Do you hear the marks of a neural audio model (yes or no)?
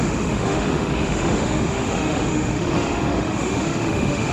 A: yes